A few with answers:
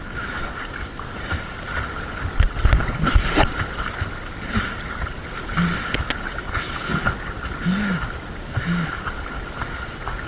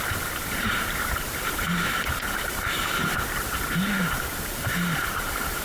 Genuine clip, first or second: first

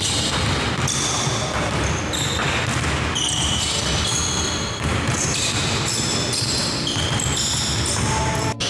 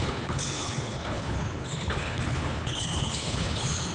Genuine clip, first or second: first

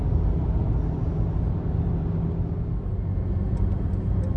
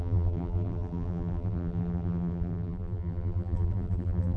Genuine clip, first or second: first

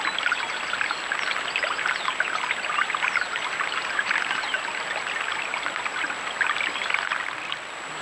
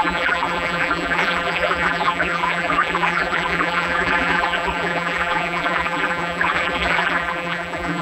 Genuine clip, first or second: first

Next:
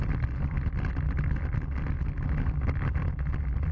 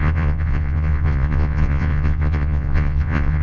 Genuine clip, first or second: first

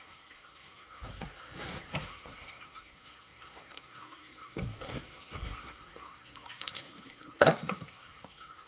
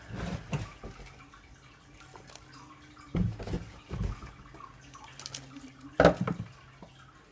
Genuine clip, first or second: second